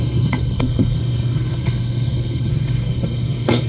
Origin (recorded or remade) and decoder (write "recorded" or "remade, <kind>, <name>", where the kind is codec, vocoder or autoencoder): remade, codec, SNAC